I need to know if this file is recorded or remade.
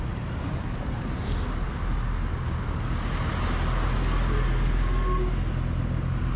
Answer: recorded